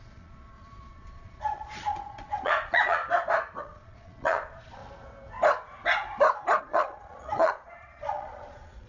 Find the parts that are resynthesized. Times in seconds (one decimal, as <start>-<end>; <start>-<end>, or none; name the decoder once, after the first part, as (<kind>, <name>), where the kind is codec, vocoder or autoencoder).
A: 0.0-3.0 (vocoder, Vocos); 3.6-4.8; 6.6-8.9